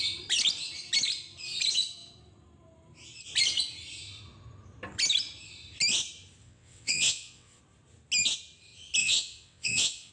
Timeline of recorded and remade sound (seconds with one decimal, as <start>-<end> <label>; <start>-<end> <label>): 0.0-6.4 recorded; 6.4-7.6 remade; 7.6-9.0 recorded; 9.0-10.1 remade